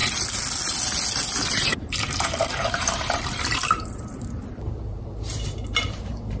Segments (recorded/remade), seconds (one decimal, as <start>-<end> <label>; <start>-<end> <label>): 0.0-1.5 recorded; 1.5-6.4 remade